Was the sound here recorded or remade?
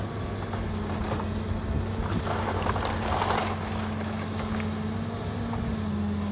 recorded